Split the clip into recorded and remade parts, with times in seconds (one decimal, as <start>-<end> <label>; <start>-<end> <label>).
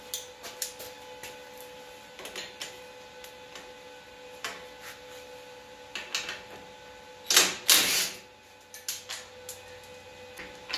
0.0-10.8 recorded